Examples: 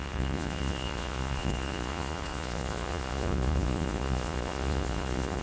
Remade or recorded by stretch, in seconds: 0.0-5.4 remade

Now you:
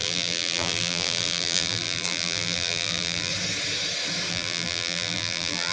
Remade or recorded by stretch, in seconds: 0.0-3.3 remade; 3.3-4.3 recorded; 4.3-5.7 remade

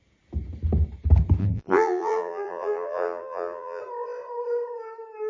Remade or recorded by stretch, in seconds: 0.0-1.4 recorded; 1.4-3.8 remade; 3.8-5.3 recorded

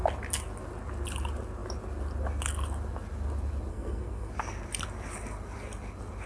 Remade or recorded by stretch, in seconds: 0.0-3.7 recorded; 3.7-4.3 remade; 4.3-6.3 recorded